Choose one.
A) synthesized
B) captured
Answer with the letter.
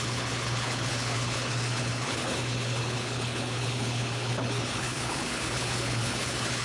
A